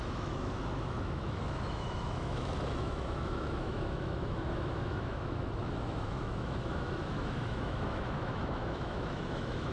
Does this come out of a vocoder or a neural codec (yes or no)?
yes